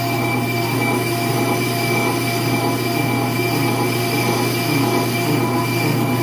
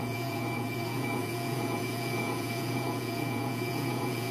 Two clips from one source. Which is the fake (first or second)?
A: second